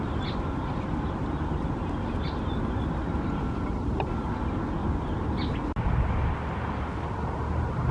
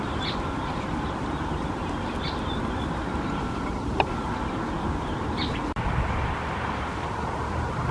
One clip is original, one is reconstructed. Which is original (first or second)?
first